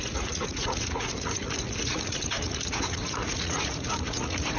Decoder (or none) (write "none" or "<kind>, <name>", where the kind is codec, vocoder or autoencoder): vocoder, Vocos